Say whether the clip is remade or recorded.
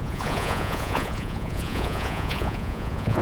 remade